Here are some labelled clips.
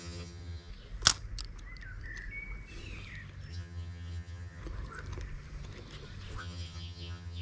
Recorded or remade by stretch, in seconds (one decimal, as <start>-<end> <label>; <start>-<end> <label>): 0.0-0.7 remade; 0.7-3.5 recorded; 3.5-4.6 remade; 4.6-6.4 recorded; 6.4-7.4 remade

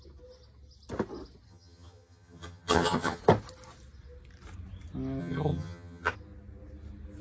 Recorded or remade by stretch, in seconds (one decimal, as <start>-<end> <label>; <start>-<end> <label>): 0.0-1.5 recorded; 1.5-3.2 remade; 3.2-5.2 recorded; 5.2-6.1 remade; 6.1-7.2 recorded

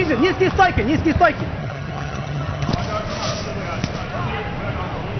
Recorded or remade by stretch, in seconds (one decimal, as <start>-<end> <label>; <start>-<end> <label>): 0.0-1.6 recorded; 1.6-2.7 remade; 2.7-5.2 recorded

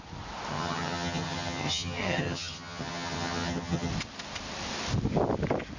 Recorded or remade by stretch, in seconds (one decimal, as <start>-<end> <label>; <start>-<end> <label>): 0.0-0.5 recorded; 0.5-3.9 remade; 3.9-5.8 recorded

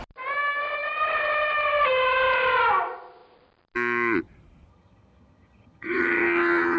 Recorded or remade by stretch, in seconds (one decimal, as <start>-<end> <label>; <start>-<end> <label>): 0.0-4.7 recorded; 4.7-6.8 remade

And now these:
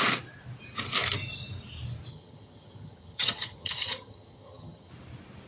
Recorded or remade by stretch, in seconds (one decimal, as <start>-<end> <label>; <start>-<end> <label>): 0.0-2.1 recorded; 2.1-4.9 remade; 4.9-5.5 recorded

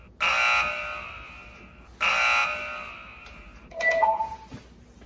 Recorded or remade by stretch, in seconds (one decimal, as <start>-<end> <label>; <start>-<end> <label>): 0.0-5.1 recorded

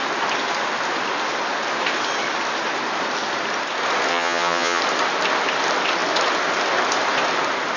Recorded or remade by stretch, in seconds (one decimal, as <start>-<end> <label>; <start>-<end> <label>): 0.0-4.1 recorded; 4.1-4.8 remade; 4.8-7.8 recorded